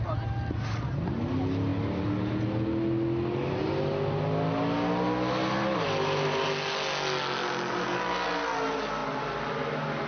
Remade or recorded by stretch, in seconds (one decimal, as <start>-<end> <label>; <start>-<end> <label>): 0.0-10.1 recorded